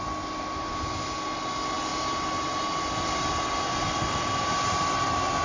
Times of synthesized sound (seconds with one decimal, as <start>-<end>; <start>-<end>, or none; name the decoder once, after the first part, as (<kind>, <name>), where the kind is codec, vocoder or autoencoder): none